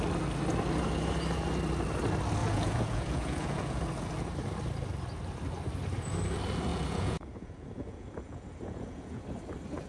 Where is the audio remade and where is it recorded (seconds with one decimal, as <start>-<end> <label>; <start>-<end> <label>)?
0.0-2.4 recorded; 2.4-3.8 remade; 3.8-6.7 recorded; 6.7-9.2 remade; 9.2-9.9 recorded